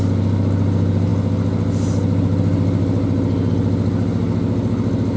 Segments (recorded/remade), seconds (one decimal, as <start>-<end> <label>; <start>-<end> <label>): 0.0-5.2 recorded